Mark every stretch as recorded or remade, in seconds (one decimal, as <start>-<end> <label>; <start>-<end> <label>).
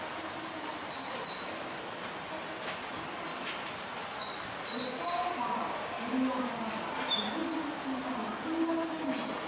0.0-0.7 recorded; 0.7-1.8 remade; 1.8-3.3 recorded; 3.3-6.5 remade; 6.5-9.5 recorded